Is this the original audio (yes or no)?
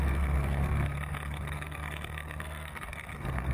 no